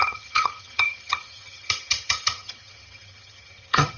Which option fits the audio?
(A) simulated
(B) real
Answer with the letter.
A